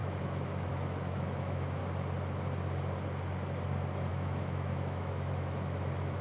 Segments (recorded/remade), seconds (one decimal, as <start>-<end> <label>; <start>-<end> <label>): 0.0-1.8 remade; 1.8-4.1 recorded; 4.1-6.2 remade